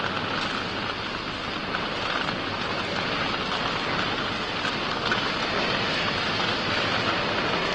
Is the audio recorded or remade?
recorded